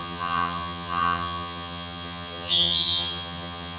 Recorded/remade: remade